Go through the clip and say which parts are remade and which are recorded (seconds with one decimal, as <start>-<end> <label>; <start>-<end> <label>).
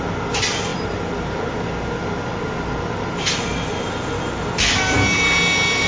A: 0.0-5.9 recorded